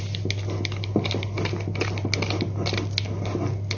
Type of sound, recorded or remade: recorded